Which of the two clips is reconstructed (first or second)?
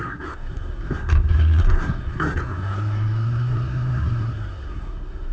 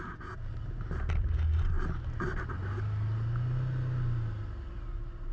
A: first